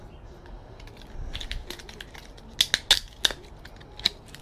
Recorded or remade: recorded